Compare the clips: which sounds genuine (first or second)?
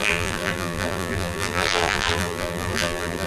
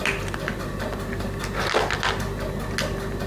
second